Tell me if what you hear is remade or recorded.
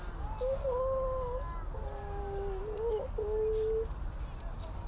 recorded